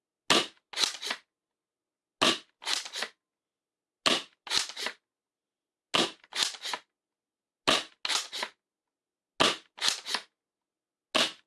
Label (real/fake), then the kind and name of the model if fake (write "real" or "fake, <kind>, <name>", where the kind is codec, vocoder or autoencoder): real